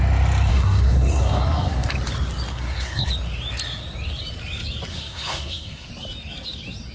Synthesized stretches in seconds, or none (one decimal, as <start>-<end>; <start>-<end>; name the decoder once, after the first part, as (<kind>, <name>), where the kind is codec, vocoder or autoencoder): 0.5-1.9 (codec, SNAC); 2.5-3.1; 4.9-5.9